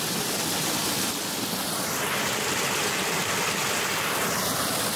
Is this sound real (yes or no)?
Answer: yes